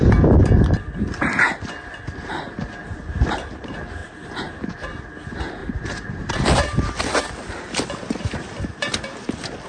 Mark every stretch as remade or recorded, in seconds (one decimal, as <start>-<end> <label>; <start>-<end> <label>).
0.0-4.0 recorded; 4.0-5.0 remade; 5.0-5.6 recorded; 5.6-6.8 remade; 6.8-9.7 recorded